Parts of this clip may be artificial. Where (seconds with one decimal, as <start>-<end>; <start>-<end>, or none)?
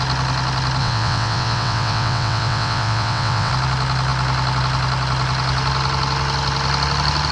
0.8-3.5